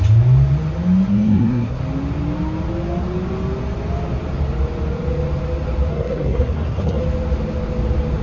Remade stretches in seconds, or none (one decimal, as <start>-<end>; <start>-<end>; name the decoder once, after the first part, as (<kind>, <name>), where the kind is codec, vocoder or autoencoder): 1.1-1.8 (codec, SNAC); 5.9-7.0